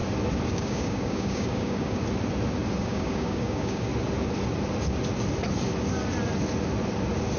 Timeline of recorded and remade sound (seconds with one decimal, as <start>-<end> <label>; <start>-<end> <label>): 0.0-0.5 recorded; 0.5-2.0 remade; 2.0-2.8 recorded; 2.8-3.9 remade; 3.9-7.4 recorded